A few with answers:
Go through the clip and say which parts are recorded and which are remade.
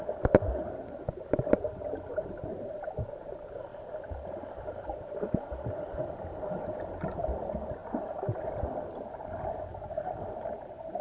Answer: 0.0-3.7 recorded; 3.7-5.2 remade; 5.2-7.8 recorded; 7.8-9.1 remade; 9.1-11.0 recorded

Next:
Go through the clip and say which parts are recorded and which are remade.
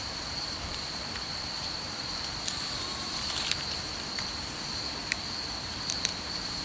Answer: 0.0-6.6 remade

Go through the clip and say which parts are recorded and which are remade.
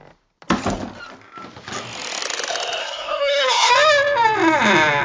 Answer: 0.0-2.8 recorded; 2.8-3.7 remade; 3.7-5.0 recorded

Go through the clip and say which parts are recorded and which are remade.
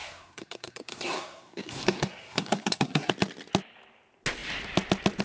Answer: 0.0-3.1 remade; 3.1-5.2 recorded